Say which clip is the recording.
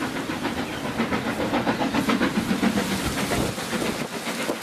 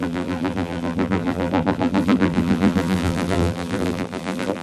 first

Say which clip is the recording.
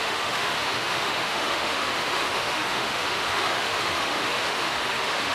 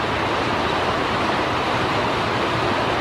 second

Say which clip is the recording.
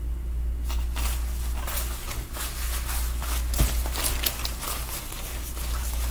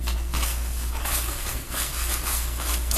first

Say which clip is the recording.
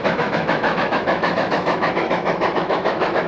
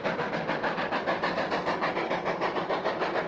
second